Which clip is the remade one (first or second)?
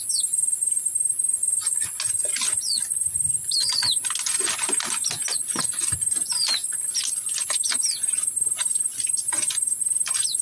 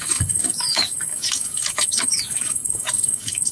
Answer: second